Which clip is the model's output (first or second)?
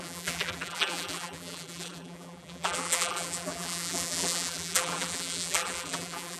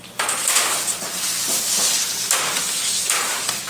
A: first